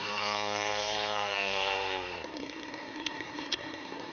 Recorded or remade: remade